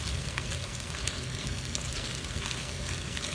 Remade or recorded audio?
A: remade